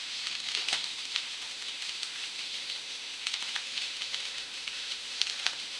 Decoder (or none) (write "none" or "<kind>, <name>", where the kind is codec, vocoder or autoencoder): autoencoder, DAC-VAE